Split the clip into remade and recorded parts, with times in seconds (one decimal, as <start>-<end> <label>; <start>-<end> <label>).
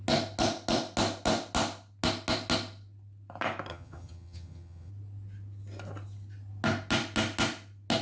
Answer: 0.0-3.7 recorded; 3.7-4.9 remade; 4.9-8.0 recorded